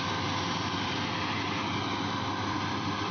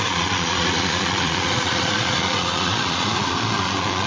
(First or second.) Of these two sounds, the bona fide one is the first